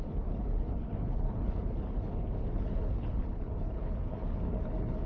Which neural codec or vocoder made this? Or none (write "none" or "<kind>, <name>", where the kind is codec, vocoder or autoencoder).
codec, HILCodec